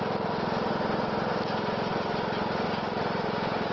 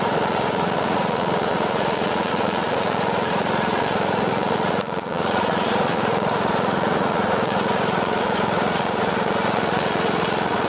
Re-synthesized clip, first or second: second